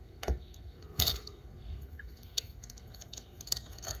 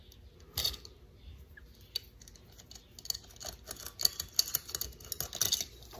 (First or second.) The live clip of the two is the second